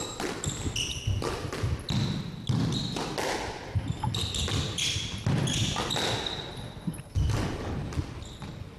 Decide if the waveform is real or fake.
real